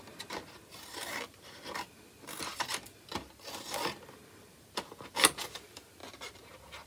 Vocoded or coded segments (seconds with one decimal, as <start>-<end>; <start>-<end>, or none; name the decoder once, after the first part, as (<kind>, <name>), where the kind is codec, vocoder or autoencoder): 0.0-2.5 (vocoder, BigVGAN v2); 4.1-6.0